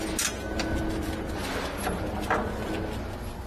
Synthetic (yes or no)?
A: no